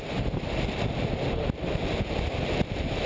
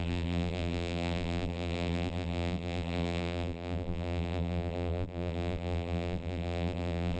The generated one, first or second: second